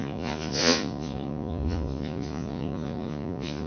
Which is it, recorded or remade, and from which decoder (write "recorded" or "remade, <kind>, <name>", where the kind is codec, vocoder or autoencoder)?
remade, vocoder, Vocos